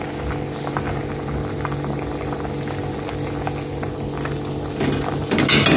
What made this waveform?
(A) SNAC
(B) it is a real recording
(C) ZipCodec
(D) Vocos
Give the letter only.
B